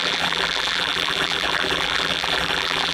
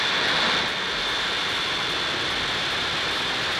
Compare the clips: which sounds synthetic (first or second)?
first